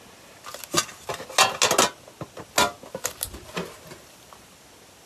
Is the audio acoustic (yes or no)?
yes